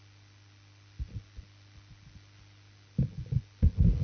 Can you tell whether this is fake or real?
real